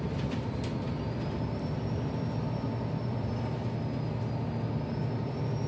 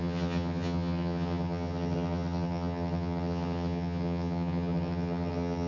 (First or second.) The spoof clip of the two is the second